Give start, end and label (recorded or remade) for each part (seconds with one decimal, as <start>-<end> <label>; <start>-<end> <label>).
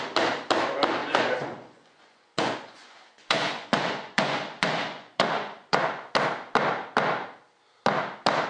0.0-1.0 recorded; 1.0-6.1 remade; 6.1-8.5 recorded